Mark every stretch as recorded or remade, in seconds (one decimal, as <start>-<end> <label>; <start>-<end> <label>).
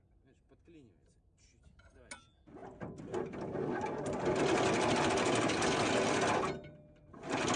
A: 0.0-7.6 recorded